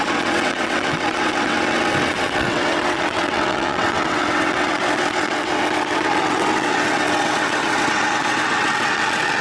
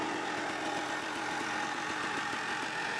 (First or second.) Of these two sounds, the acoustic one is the second